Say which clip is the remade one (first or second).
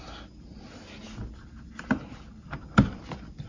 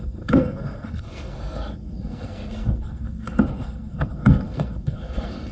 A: second